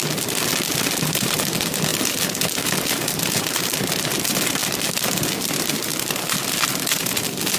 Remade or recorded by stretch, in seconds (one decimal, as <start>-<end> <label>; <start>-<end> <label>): 0.0-7.6 recorded